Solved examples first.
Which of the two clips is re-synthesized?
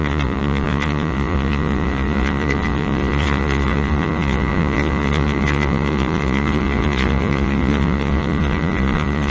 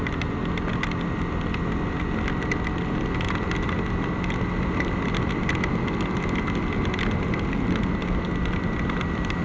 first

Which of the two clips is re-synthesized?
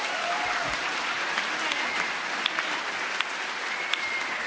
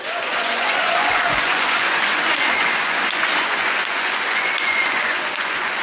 second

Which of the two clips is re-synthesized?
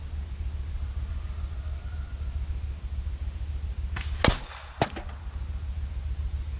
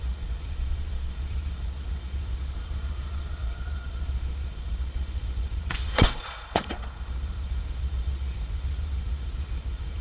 second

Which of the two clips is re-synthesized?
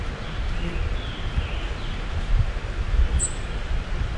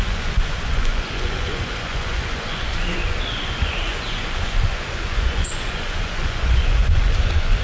second